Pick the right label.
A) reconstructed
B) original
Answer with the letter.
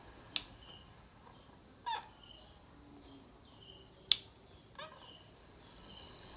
B